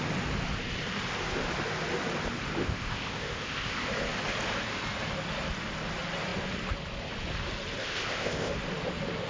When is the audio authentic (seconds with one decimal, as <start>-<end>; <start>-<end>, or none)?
0.0-2.6; 3.9-7.8; 8.5-9.3

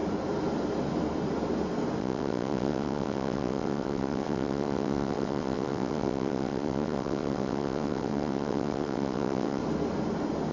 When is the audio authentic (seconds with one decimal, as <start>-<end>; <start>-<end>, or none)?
0.0-2.0; 9.6-10.5

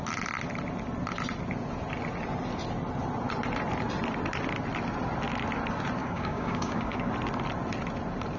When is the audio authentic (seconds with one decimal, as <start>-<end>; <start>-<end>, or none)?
0.0-6.0; 7.1-8.4

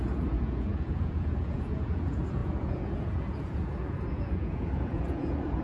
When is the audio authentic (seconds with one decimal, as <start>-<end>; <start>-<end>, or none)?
none

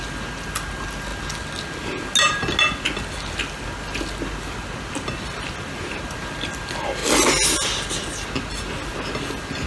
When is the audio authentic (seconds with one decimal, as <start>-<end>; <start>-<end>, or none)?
0.0-9.7

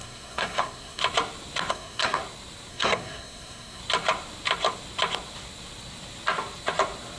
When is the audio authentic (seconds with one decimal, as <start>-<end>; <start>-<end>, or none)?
1.0-1.7; 2.2-2.7; 3.8-7.2